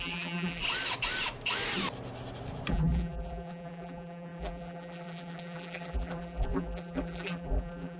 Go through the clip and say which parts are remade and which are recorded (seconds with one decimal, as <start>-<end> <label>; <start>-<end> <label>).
0.0-0.6 remade; 0.6-2.7 recorded; 2.7-8.0 remade